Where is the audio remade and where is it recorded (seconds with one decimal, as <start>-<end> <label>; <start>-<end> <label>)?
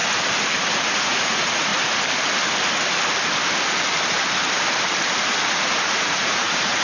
0.0-0.7 recorded; 0.7-1.7 remade; 1.7-5.5 recorded; 5.5-6.8 remade